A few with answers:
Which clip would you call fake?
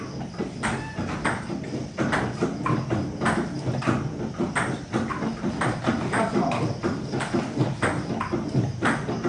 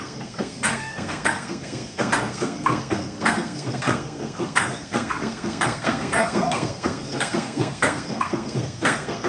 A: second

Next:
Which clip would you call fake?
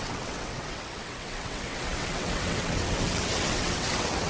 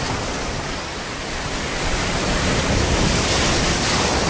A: first